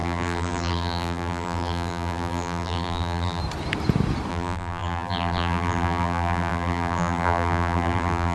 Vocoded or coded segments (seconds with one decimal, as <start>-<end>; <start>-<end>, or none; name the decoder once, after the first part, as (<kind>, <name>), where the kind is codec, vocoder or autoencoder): 0.0-3.4 (vocoder, BigVGAN v2); 4.3-8.3